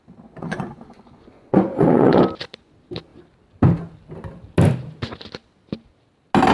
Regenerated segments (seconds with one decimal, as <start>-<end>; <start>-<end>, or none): 0.4-2.2